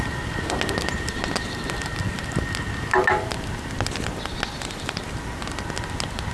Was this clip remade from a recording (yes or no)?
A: no